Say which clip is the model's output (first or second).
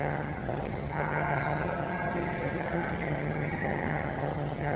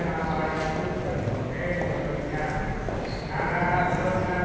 first